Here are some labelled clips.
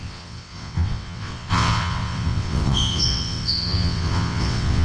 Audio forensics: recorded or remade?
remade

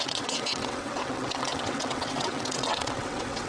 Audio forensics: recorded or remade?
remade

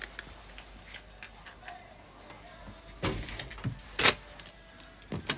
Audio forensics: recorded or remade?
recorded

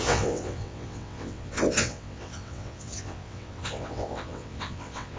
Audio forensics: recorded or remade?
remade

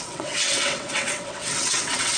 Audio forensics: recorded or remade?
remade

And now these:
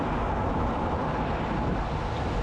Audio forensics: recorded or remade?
recorded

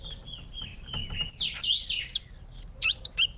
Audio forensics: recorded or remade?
recorded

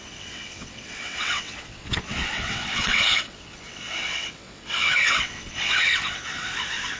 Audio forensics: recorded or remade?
remade